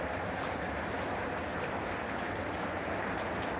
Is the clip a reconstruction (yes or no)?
no